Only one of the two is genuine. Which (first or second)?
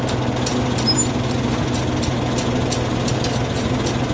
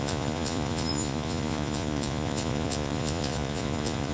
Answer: first